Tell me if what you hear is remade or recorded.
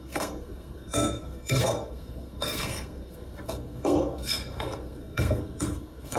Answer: remade